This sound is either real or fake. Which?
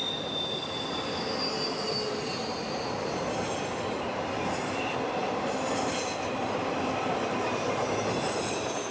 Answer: real